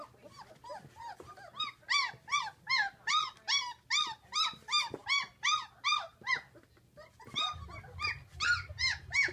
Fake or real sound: real